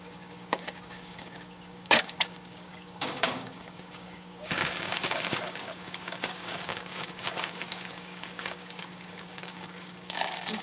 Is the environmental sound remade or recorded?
remade